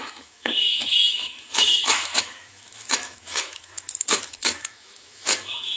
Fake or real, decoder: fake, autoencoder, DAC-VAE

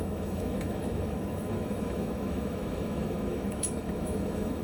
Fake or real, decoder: fake, autoencoder, DAC-VAE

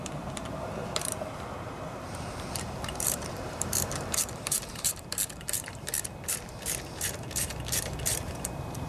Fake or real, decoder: fake, vocoder, BigVGAN v2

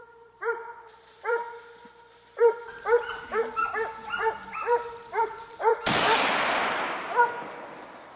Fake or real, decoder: fake, vocoder, BigVGAN v2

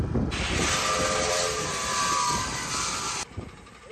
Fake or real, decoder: real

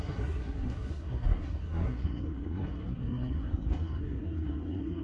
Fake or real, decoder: fake, codec, SNAC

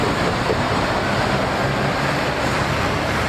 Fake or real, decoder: fake, vocoder, BigVGAN v2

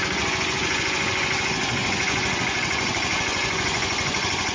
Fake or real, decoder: fake, vocoder, Vocos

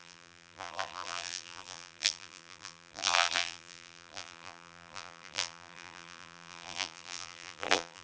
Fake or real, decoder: fake, vocoder, BigVGAN v2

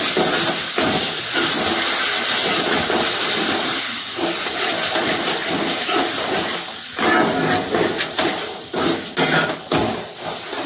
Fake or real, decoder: real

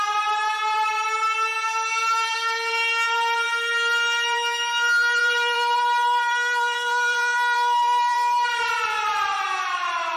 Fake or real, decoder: fake, vocoder, BigVGAN v2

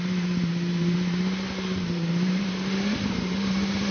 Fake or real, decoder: fake, vocoder, BigVGAN v2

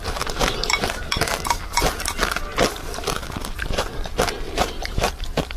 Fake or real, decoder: real